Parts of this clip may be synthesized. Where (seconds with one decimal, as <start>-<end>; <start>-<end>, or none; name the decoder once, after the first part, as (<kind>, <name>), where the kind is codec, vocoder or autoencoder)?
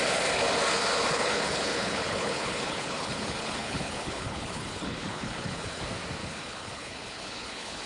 1.1-5.8 (codec, HILCodec); 6.2-7.9